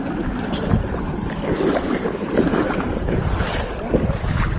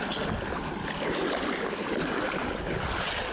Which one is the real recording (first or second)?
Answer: second